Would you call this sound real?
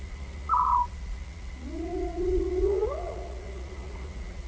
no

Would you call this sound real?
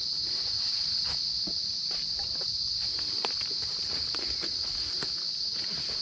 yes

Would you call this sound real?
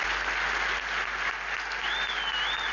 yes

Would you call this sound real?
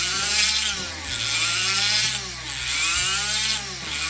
yes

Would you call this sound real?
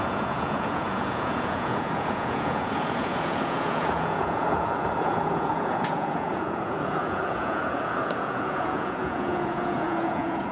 no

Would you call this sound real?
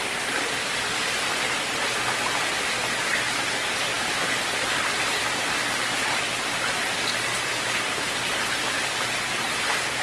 yes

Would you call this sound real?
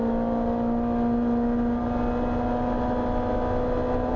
yes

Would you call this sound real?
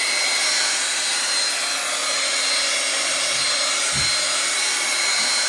yes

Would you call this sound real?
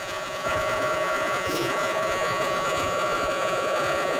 no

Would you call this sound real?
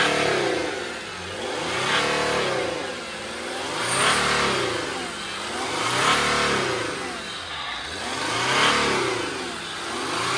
yes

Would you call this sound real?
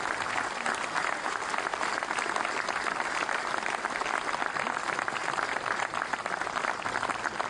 yes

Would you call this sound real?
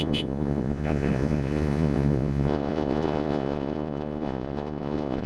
no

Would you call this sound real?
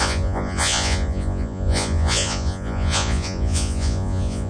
no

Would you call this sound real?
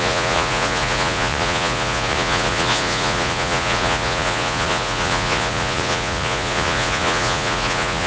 no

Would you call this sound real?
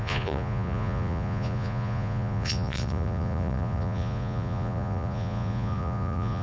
no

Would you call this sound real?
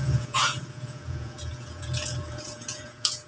no